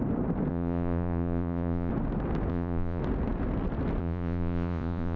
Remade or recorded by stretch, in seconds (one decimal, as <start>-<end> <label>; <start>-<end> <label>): 0.0-0.5 recorded; 0.5-1.9 remade; 1.9-2.5 recorded; 2.5-3.0 remade; 3.0-4.0 recorded; 4.0-5.2 remade